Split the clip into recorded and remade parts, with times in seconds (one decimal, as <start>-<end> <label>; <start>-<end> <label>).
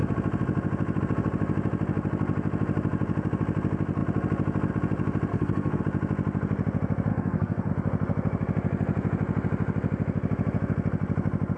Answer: 0.0-5.3 recorded; 5.3-5.8 remade; 5.8-7.1 recorded; 7.1-7.7 remade; 7.7-11.6 recorded